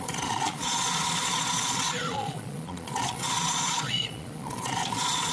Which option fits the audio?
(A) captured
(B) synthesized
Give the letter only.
B